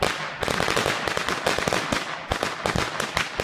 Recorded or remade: recorded